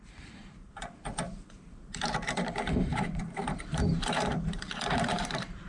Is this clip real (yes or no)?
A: no